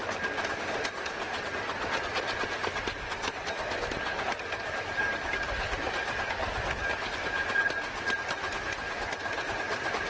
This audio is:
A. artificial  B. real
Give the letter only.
B